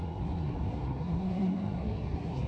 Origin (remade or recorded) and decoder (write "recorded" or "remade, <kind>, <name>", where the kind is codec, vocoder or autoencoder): remade, codec, SNAC